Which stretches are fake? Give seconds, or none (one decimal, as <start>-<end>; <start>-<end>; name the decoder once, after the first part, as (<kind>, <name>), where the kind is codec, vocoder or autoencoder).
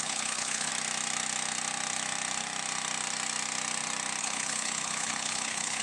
0.0-0.7 (codec, HILCodec); 4.2-5.8